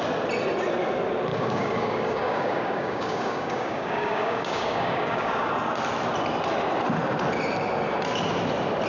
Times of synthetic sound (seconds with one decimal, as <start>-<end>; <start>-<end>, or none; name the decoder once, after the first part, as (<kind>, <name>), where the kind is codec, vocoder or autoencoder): 1.3-5.5 (codec, DAC)